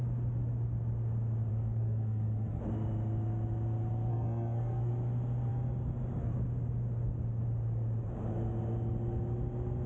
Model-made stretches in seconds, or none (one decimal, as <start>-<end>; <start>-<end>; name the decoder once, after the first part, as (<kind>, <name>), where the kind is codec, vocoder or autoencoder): 1.5-2.6 (codec, SNAC); 4.1-4.9